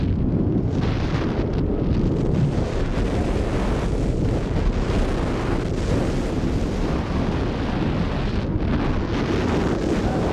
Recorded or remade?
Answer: recorded